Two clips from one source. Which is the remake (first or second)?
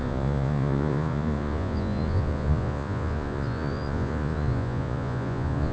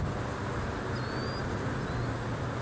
first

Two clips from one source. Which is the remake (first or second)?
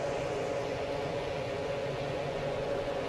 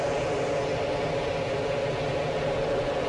first